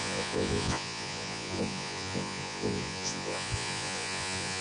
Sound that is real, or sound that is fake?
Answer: fake